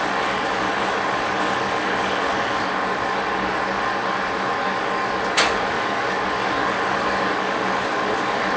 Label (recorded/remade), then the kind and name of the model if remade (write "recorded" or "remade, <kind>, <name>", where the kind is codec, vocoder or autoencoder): remade, codec, DAC